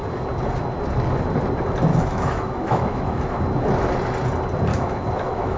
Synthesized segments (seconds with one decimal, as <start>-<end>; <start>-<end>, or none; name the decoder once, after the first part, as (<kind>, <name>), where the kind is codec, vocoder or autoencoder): 1.9-3.4 (autoencoder, DAC-VAE); 4.7-5.6